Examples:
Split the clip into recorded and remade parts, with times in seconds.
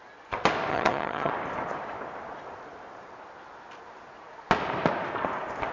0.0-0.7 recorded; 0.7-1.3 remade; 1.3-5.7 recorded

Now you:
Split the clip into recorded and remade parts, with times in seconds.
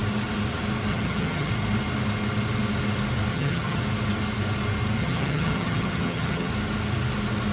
0.0-0.9 recorded; 0.9-1.5 remade; 1.5-3.3 recorded; 3.3-3.8 remade; 3.8-5.0 recorded; 5.0-6.5 remade; 6.5-7.5 recorded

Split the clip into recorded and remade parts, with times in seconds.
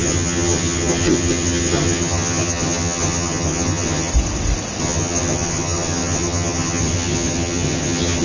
0.0-4.1 remade; 4.1-4.8 recorded; 4.8-8.2 remade